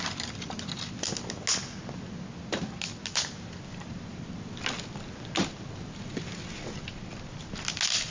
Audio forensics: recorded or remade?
recorded